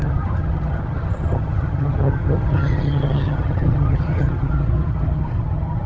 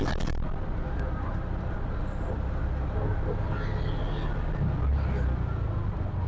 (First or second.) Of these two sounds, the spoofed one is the first